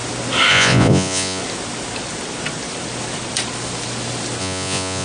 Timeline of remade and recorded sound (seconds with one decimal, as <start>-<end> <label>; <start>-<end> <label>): 0.0-0.5 recorded; 0.5-1.4 remade; 1.4-4.4 recorded; 4.4-5.0 remade